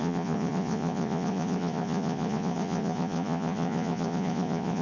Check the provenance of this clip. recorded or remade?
remade